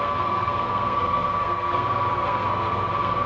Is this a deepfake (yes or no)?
yes